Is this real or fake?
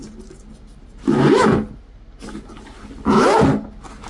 real